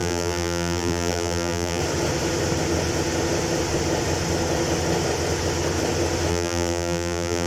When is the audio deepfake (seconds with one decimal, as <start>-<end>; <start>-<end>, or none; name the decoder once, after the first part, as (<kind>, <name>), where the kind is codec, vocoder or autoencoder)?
0.0-1.8 (vocoder, BigVGAN v2); 6.3-7.5